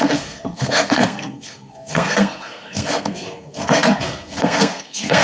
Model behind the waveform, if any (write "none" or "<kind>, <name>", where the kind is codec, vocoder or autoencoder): codec, SNAC